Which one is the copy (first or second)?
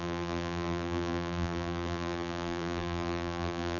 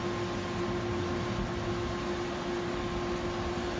first